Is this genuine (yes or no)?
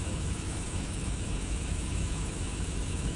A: no